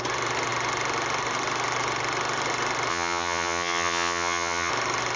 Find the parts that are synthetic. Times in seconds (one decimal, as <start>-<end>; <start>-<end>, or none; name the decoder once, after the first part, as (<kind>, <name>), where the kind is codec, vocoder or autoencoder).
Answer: 2.9-4.7 (vocoder, HiFi-GAN)